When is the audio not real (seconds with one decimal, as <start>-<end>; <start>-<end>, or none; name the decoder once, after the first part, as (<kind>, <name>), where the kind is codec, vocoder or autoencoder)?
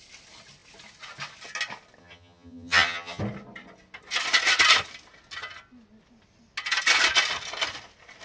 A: 2.0-3.2 (vocoder, HiFi-GAN)